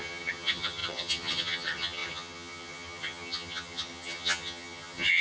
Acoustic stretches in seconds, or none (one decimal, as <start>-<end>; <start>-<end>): none